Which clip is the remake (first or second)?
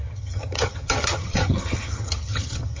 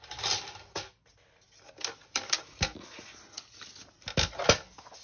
first